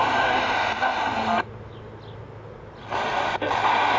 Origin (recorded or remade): recorded